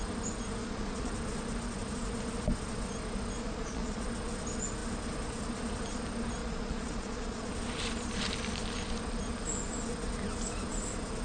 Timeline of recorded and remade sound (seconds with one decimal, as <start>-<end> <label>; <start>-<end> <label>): 0.0-0.6 recorded; 0.6-1.1 remade; 1.1-3.4 recorded; 3.4-4.0 remade; 4.0-6.4 recorded; 6.4-7.5 remade; 7.5-11.2 recorded